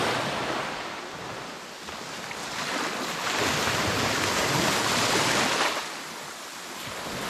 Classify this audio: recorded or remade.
recorded